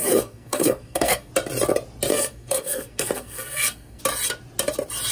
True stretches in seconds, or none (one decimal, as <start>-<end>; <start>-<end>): 1.3-2.1; 4.0-5.1